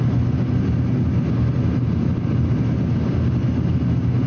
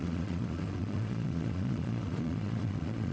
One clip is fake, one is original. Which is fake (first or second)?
second